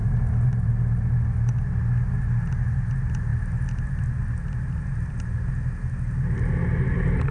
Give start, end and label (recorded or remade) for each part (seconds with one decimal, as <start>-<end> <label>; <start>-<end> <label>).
0.0-7.3 recorded